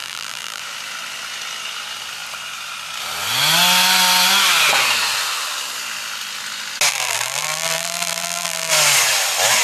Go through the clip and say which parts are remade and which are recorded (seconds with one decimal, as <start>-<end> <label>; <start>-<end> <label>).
0.0-0.6 remade; 0.6-6.9 recorded; 6.9-8.7 remade; 8.7-9.6 recorded